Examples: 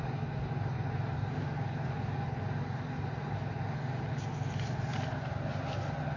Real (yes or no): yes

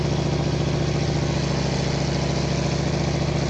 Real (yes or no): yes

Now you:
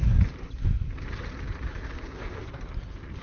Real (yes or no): yes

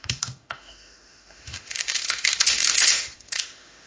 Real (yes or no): no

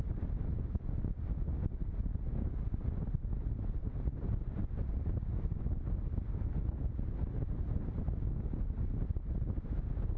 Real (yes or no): yes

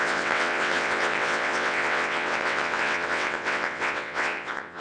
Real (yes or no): no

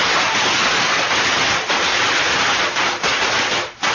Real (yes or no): yes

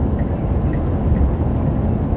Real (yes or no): yes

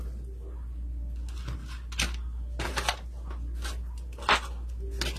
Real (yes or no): yes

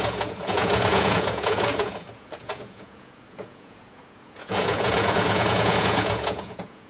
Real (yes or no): no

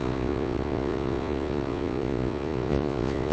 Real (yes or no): no